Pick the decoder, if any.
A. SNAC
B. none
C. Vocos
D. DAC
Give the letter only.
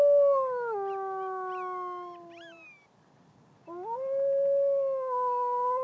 B